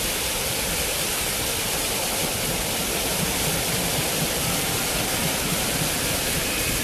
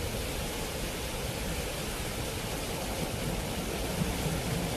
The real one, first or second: second